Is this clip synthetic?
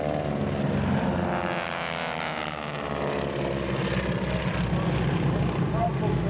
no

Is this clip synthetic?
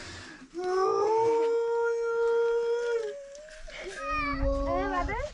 no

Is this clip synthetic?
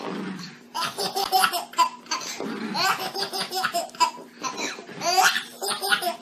no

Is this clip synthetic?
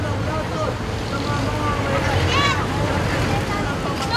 no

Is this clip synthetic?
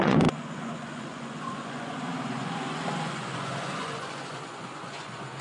yes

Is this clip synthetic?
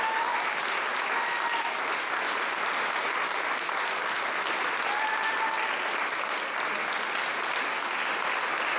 no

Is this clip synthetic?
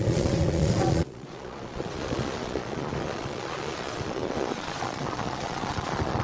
yes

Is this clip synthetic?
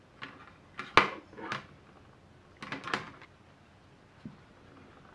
no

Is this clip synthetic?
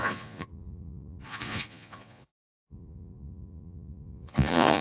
yes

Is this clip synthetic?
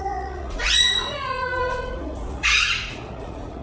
yes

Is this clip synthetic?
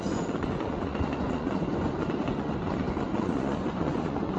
yes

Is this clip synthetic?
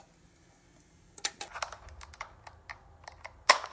no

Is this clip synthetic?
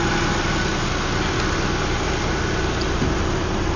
no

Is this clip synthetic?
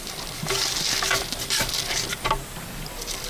no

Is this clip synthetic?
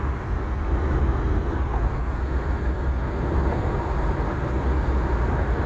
no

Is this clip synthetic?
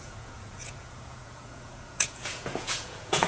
yes